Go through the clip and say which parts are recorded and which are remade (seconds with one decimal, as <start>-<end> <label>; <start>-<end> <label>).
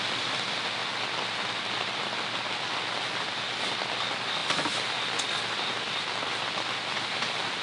0.0-7.6 recorded